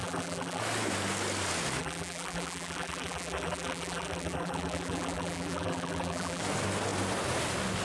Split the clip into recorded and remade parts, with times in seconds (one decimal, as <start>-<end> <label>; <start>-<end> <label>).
0.0-0.6 remade; 0.6-1.8 recorded; 1.8-6.4 remade; 6.4-7.8 recorded